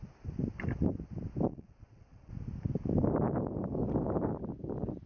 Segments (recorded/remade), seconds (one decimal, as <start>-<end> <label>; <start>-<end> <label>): 0.0-1.5 recorded; 1.5-2.3 remade; 2.3-5.1 recorded